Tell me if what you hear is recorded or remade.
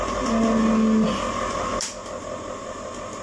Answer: recorded